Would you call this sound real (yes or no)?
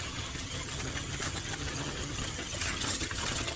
no